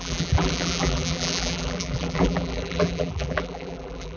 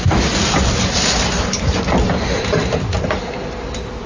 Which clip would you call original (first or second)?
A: second